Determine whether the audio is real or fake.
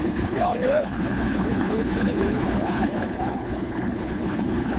fake